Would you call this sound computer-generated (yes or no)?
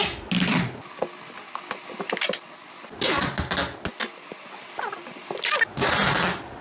no